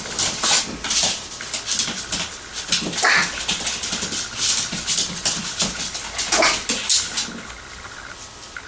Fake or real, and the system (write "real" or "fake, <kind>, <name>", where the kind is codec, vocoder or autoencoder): real